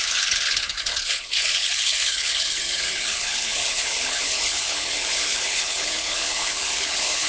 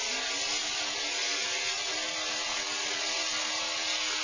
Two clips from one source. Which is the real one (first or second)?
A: second